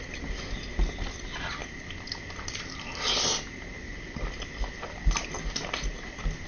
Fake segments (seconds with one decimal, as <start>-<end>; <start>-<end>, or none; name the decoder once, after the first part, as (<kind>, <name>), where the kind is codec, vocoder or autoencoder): none